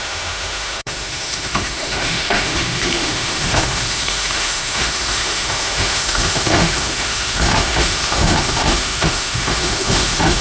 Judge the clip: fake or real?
fake